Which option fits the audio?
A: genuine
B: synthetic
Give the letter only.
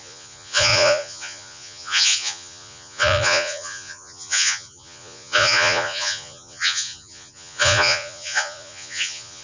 B